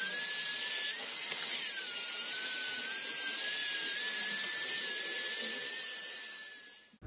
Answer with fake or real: real